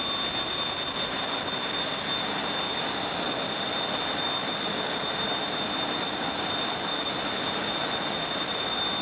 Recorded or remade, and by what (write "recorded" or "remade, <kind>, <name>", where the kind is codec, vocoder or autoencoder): recorded